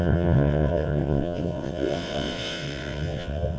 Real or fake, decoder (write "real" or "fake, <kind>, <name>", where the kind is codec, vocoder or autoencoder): fake, vocoder, WaveNeXt